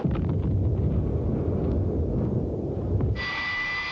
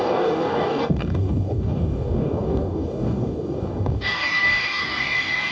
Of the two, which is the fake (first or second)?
second